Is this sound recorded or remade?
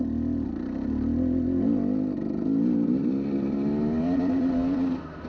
recorded